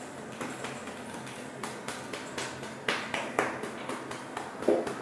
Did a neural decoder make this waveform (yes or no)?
no